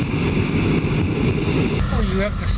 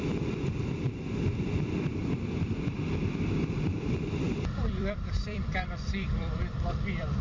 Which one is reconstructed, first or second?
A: second